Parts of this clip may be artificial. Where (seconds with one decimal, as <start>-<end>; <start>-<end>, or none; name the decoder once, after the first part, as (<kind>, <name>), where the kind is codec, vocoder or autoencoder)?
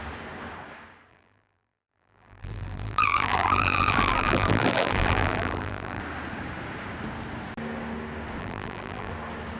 1.1-6.0 (vocoder, BigVGAN v2); 8.4-9.1